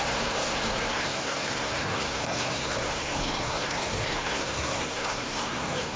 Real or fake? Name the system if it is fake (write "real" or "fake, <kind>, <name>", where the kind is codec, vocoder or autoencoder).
fake, codec, SNAC